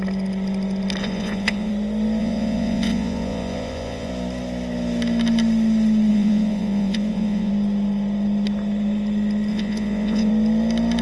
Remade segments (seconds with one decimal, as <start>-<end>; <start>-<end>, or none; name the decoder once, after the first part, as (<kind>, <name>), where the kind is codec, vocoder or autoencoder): 1.0-1.7 (vocoder, Vocos); 2.2-4.1; 6.1-7.5; 9.5-10.3